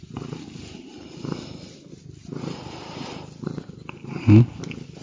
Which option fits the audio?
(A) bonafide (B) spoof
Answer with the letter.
A